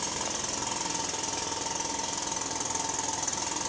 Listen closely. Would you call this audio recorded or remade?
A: recorded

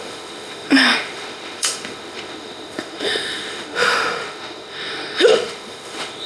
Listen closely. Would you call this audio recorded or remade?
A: remade